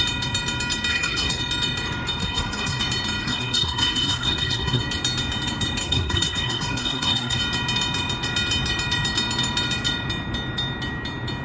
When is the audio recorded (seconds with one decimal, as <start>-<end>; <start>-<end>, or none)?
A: 0.0-0.9; 1.4-2.2; 2.8-3.2; 4.8-5.8; 7.4-11.4